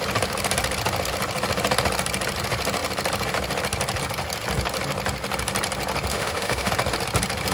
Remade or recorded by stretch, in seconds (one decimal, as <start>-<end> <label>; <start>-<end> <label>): 0.0-6.1 recorded; 6.1-6.7 remade; 6.7-7.5 recorded

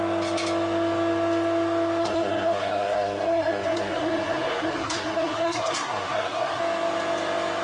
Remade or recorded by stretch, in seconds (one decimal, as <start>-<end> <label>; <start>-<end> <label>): 0.0-2.0 recorded; 2.0-6.6 remade; 6.6-7.6 recorded

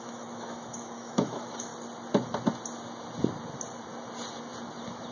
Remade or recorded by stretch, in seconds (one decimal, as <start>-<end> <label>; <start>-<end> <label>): 0.0-1.7 remade; 1.7-5.1 recorded

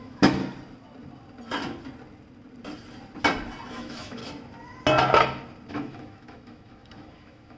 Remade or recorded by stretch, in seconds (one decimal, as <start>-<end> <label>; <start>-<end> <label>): 0.0-0.4 remade; 0.4-3.7 recorded; 3.7-4.2 remade; 4.2-5.7 recorded; 5.7-7.6 remade

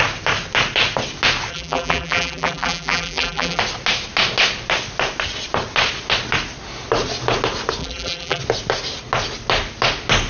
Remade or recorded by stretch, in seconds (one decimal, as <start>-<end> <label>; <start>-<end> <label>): 0.0-1.5 recorded; 1.5-3.6 remade; 3.6-7.8 recorded; 7.8-8.4 remade; 8.4-10.3 recorded

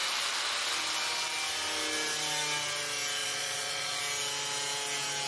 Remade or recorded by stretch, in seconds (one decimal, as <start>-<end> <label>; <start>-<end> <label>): 0.0-3.2 recorded; 3.2-4.0 remade; 4.0-5.3 recorded

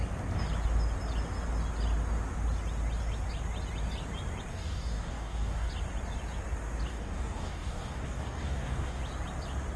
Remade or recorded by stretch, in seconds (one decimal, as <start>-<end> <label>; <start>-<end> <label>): 0.0-4.5 recorded; 4.5-5.7 remade; 5.7-6.9 recorded; 6.9-9.0 remade; 9.0-9.8 recorded